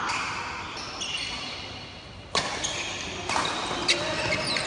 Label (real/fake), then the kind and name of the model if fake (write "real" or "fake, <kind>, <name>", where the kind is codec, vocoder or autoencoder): real